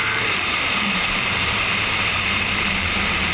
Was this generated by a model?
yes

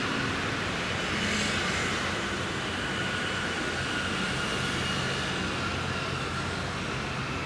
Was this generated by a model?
no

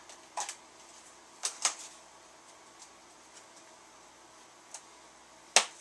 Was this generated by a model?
no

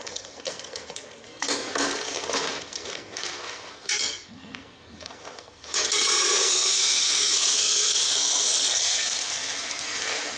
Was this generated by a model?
yes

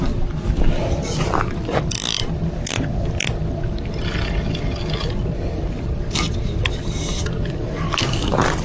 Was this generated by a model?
no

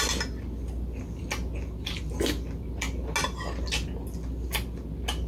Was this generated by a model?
no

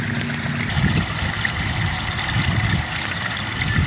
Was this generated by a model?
no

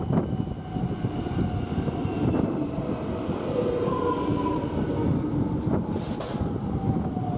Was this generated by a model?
no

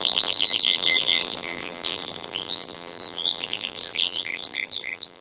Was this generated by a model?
yes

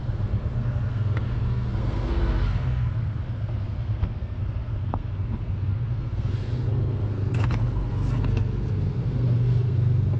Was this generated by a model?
yes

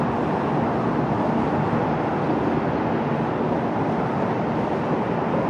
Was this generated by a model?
no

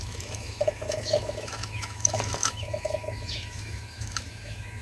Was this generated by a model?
yes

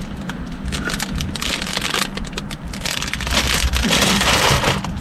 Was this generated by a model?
no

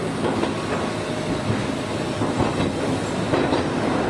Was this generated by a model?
no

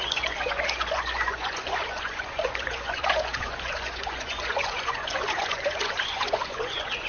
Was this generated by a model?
yes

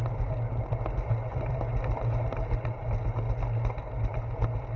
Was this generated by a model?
no